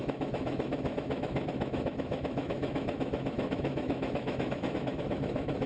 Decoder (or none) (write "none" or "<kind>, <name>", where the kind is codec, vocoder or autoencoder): autoencoder, DAC-VAE